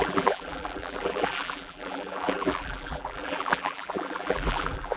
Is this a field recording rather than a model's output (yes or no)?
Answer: no